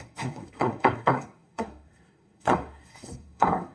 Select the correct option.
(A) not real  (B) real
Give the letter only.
A